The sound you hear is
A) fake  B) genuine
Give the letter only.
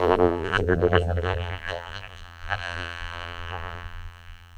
A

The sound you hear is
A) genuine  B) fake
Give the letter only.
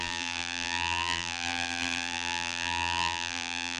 B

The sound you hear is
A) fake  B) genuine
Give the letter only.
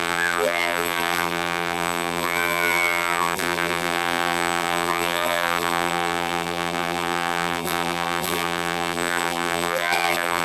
A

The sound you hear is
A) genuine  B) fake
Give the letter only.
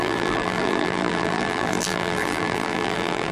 B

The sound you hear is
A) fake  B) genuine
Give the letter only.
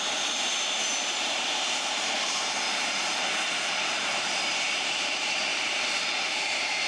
A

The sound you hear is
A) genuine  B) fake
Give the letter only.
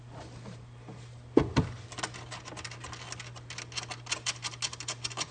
A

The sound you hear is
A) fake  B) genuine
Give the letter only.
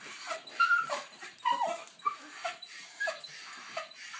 A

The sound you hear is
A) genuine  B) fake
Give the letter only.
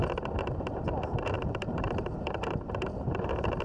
B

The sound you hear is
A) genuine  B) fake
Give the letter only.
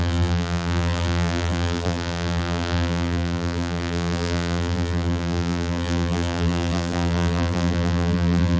B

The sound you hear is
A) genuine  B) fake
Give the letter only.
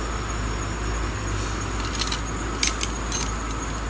A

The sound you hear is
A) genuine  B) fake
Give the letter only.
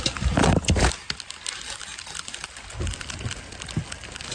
A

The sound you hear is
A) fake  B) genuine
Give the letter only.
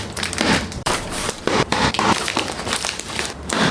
A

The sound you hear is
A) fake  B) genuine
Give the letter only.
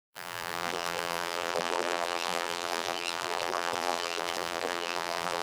A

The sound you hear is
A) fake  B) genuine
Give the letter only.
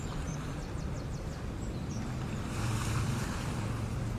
A